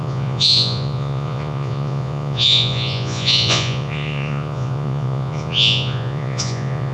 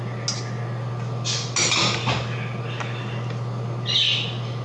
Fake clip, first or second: first